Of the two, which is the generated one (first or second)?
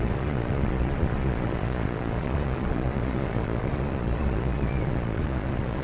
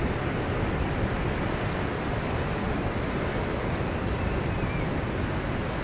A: first